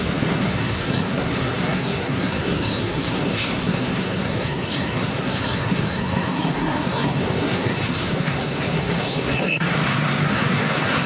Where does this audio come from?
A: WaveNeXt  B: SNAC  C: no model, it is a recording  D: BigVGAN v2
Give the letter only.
B